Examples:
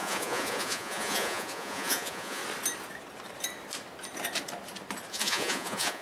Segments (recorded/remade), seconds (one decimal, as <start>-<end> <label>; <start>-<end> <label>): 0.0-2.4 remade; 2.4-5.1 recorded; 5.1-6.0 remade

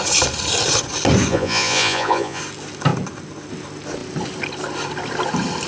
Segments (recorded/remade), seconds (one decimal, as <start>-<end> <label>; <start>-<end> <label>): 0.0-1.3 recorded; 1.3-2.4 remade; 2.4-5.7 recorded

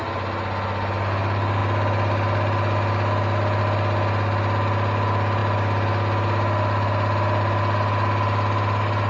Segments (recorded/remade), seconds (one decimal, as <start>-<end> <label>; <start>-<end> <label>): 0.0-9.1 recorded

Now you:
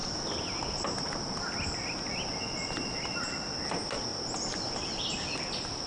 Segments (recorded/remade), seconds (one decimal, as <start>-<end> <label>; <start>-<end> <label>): 0.0-5.9 recorded